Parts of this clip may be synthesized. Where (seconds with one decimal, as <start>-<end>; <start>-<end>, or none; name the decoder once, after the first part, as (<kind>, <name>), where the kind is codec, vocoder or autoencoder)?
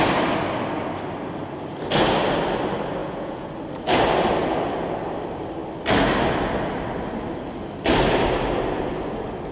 3.0-3.5 (vocoder, Vocos)